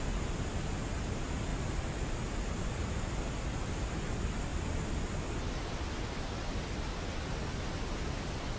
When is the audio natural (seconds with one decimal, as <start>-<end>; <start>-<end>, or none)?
0.0-8.6